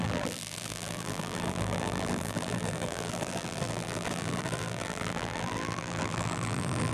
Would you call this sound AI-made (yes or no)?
yes